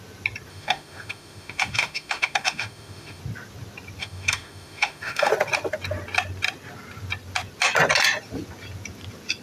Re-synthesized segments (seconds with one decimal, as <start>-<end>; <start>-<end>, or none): 0.5-3.2; 4.0-5.3